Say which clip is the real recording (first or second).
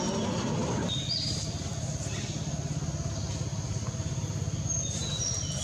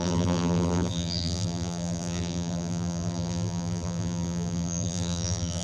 first